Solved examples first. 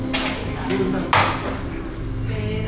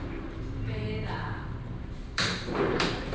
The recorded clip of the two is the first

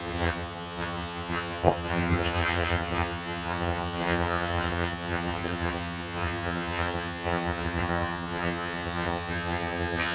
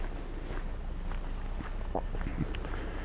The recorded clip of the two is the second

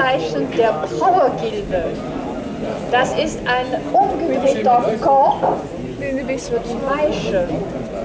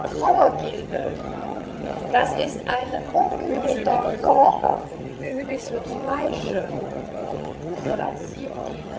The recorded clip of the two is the first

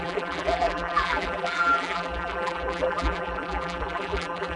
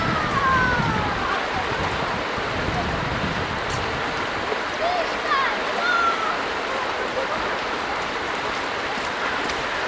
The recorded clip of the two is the second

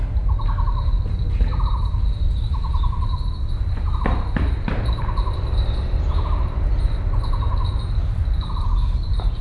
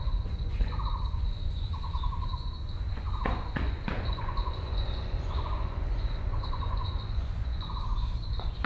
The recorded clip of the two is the first